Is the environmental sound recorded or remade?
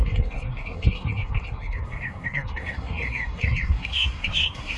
remade